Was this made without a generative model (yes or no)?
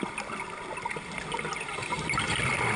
yes